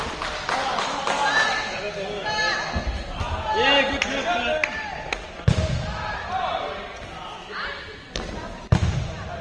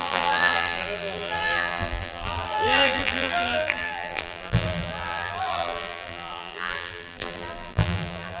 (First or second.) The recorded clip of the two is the first